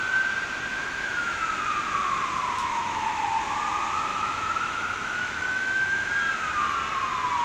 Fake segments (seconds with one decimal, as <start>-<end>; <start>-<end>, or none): 0.7-1.4; 2.6-3.2; 4.1-6.1